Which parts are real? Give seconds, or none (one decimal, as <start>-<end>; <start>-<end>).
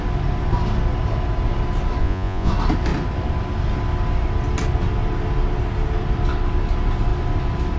0.0-2.0; 2.5-7.8